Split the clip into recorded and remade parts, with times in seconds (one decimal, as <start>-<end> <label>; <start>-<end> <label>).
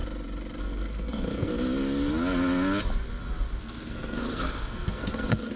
0.0-0.6 recorded; 0.6-1.5 remade; 1.5-3.6 recorded; 3.6-5.6 remade